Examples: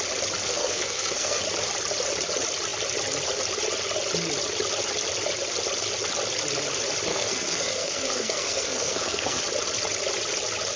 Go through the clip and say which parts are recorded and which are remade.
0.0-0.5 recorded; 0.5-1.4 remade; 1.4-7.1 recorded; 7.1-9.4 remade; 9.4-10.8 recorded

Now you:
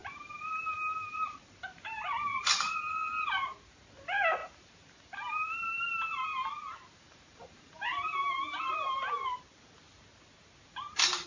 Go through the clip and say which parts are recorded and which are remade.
0.0-1.4 remade; 1.4-4.4 recorded; 4.4-9.4 remade; 9.4-11.3 recorded

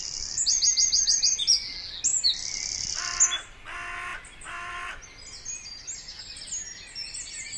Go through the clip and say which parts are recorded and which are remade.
0.0-7.6 recorded

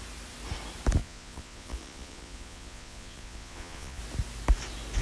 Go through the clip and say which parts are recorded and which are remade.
0.0-1.0 recorded; 1.0-4.0 remade; 4.0-5.0 recorded

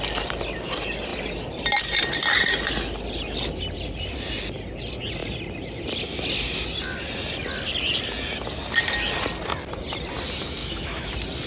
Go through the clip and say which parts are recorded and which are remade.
0.0-10.6 recorded; 10.6-11.1 remade; 11.1-11.5 recorded

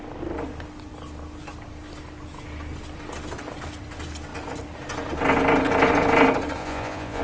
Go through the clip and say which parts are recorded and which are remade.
0.0-6.6 recorded; 6.6-7.2 remade

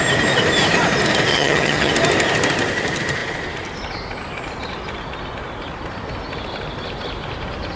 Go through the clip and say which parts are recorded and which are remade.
0.0-1.3 recorded; 1.3-1.9 remade; 1.9-7.8 recorded